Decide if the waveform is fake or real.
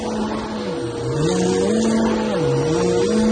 real